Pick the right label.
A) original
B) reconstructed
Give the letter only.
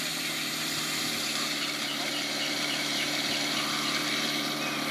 B